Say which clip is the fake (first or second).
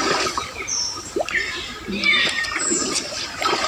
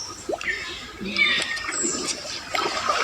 first